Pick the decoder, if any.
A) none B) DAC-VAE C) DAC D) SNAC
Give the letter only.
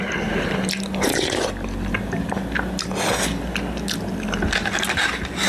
A